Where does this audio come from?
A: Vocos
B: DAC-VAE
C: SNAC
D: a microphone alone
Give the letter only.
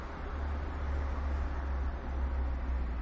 D